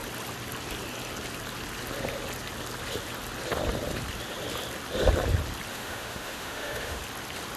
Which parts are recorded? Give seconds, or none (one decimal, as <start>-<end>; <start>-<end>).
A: 0.0-5.7; 7.0-7.6